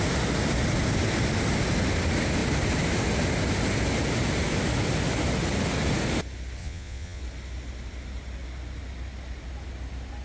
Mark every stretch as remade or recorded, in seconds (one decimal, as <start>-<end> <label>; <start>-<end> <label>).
0.0-6.6 recorded; 6.6-7.2 remade; 7.2-10.2 recorded